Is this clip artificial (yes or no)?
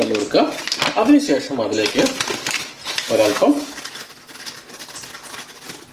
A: no